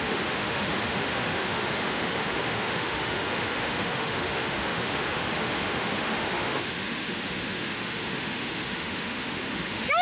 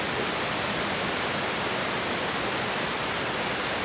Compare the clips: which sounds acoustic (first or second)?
second